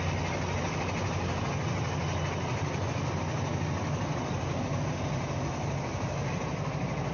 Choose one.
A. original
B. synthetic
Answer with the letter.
A